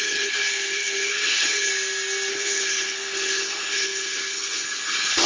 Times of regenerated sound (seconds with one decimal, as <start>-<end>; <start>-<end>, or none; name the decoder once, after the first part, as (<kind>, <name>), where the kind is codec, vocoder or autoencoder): 0.0-1.7 (codec, HILCodec); 2.3-5.3